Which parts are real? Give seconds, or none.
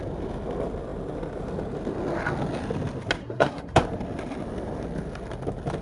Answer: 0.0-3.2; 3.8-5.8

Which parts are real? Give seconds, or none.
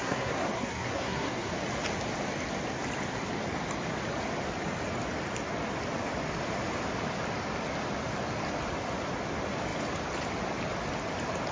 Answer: 1.5-11.5